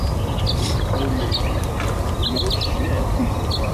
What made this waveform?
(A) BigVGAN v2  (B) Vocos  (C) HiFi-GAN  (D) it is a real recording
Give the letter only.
D